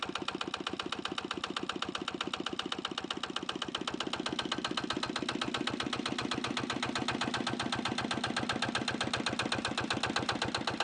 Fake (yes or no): no